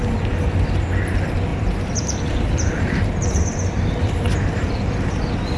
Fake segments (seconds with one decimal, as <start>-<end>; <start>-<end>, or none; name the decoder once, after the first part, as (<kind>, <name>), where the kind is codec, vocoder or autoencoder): 1.5-4.9 (vocoder, BigVGAN v2)

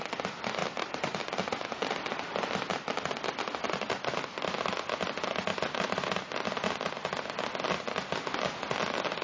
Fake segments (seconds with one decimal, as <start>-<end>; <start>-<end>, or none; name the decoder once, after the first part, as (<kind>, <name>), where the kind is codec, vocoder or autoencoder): 0.6-1.2 (vocoder, BigVGAN v2); 5.5-6.3

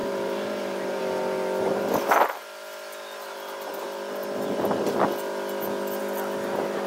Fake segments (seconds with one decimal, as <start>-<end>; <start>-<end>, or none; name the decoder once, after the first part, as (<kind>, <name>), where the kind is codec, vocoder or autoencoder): 0.0-1.0 (vocoder, BigVGAN v2)

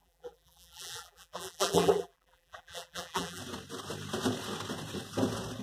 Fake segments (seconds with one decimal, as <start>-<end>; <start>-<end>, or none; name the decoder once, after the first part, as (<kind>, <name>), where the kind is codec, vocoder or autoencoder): 0.0-3.4 (vocoder, BigVGAN v2)

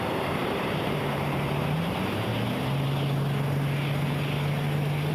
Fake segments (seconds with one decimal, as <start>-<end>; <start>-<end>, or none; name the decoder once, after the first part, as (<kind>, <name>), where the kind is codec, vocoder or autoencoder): 0.0-2.3 (vocoder, BigVGAN v2)

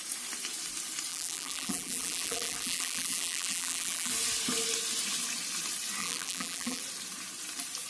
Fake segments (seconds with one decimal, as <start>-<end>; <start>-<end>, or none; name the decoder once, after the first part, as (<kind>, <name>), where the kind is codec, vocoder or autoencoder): 1.1-4.1 (vocoder, BigVGAN v2); 6.0-6.8

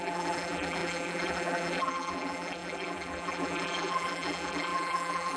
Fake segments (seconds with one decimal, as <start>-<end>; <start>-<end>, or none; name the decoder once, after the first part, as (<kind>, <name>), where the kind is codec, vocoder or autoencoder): 0.0-5.4 (vocoder, BigVGAN v2)

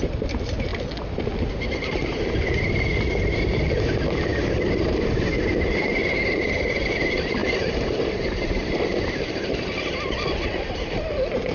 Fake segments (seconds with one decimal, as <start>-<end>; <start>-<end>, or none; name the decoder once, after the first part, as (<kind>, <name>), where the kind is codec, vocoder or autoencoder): 0.0-0.7 (vocoder, BigVGAN v2); 1.5-11.5